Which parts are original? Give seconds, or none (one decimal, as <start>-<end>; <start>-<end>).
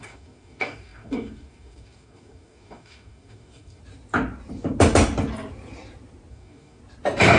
3.8-6.3; 6.8-7.4